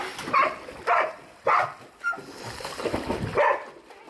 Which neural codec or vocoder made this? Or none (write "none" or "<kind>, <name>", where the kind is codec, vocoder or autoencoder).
none